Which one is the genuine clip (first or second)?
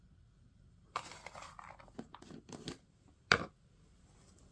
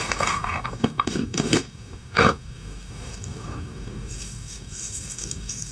first